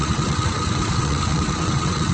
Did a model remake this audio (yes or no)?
yes